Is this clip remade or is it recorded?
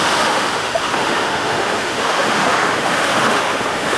remade